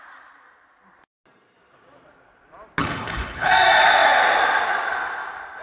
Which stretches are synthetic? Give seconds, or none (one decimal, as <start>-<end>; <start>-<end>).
2.8-3.5